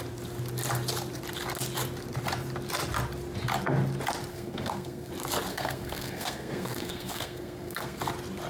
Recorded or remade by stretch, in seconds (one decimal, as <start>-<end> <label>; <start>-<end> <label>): 0.0-4.3 recorded; 4.3-5.1 remade; 5.1-5.5 recorded; 5.5-8.0 remade; 8.0-8.5 recorded